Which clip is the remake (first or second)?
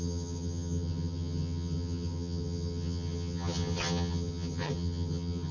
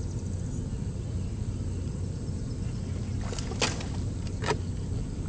first